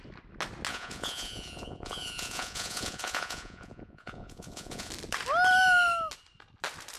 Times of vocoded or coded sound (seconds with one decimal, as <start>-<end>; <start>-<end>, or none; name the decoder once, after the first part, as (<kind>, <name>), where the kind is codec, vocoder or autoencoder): 0.7-4.9 (vocoder, Vocos)